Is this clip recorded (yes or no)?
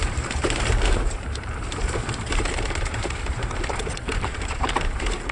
no